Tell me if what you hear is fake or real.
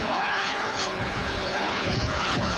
fake